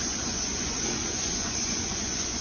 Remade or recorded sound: remade